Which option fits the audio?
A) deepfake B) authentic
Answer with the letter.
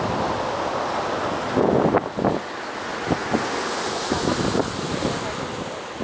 B